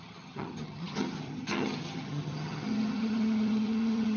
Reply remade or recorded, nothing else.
remade